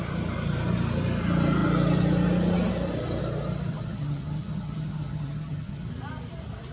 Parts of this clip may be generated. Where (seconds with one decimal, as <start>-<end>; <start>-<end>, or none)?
3.7-5.9